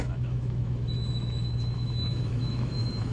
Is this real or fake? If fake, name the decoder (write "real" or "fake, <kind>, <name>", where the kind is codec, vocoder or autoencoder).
fake, autoencoder, DAC-VAE